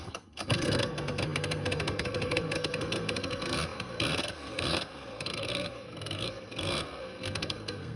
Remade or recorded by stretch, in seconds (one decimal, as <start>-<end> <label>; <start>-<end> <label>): 0.0-8.0 remade